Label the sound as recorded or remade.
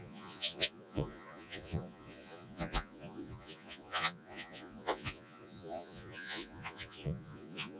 remade